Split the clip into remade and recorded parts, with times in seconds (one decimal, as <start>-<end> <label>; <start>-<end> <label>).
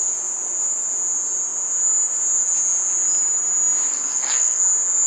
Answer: 0.0-3.9 recorded; 3.9-4.6 remade; 4.6-5.1 recorded